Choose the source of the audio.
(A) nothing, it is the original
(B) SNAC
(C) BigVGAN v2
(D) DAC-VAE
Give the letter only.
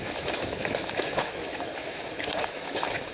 D